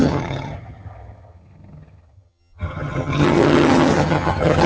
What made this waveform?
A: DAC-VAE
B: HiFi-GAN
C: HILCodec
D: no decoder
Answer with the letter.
B